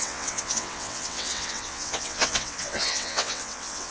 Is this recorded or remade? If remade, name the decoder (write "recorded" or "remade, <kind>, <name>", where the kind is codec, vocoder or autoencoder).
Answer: remade, vocoder, WaveNeXt